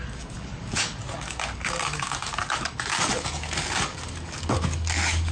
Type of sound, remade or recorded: remade